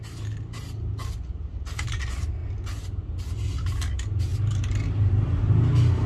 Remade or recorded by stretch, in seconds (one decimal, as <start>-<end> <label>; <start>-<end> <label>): 0.0-6.1 recorded